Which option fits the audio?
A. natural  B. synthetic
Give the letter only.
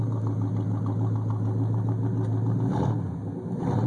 A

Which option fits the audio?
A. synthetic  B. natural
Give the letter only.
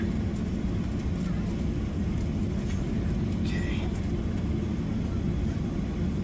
B